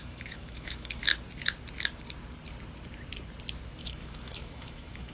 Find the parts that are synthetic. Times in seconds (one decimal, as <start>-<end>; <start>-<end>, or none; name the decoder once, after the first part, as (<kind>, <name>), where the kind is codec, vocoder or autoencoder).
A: 0.0-1.1 (autoencoder, DAC-VAE); 3.8-5.1